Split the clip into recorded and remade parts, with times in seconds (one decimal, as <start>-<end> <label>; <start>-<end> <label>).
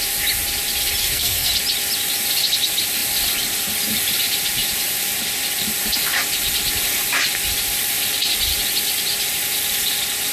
0.0-1.0 recorded; 1.0-1.5 remade; 1.5-10.3 recorded